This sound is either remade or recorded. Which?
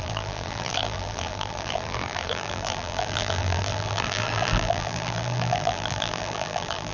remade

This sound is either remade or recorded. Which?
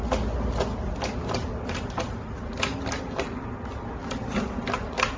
recorded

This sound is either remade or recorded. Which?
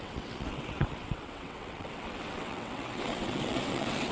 remade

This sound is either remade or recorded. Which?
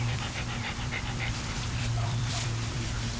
remade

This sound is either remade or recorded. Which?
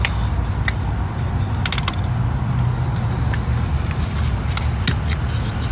recorded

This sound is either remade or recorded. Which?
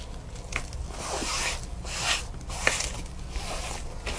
recorded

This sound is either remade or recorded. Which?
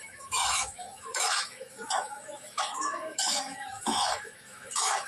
remade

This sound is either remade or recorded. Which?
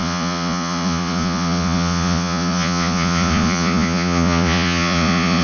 remade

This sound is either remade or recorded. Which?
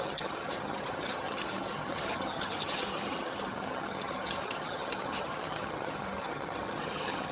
remade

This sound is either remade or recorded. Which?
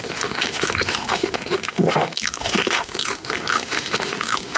remade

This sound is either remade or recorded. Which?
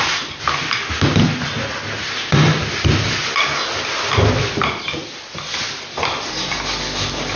recorded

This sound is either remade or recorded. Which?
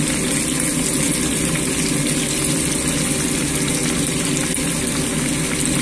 recorded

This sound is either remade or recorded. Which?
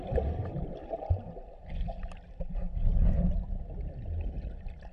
recorded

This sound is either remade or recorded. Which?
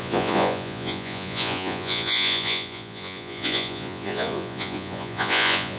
remade